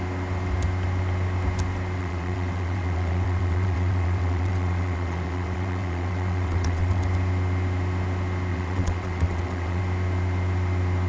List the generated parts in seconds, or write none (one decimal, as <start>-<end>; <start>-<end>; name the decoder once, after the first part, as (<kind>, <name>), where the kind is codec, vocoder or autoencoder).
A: 2.0-7.0 (vocoder, WaveNeXt); 8.5-9.8